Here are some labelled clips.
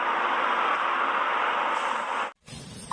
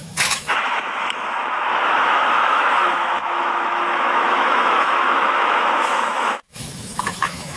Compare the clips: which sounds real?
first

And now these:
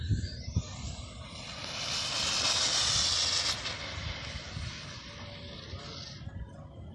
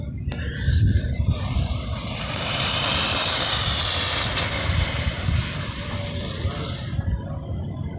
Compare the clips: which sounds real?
first